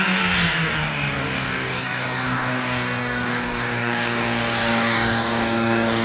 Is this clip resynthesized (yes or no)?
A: yes